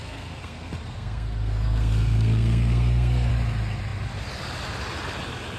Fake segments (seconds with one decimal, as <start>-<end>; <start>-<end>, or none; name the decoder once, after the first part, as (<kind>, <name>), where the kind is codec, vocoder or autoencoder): 0.0-3.3 (codec, SNAC)